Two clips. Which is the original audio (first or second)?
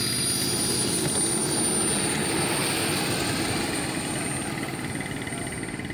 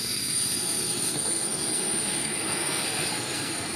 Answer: first